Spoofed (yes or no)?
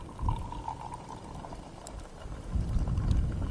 no